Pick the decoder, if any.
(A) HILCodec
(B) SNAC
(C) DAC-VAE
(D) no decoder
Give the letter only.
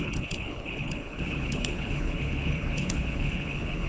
A